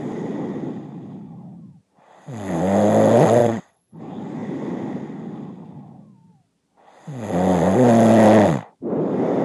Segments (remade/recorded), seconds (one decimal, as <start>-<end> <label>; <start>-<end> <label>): 0.0-3.4 recorded; 3.4-4.0 remade; 4.0-9.4 recorded